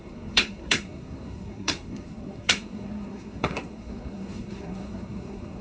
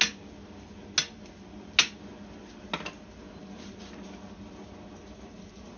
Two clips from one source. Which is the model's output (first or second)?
first